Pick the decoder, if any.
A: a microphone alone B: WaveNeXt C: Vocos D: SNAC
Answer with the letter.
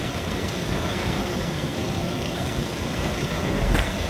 D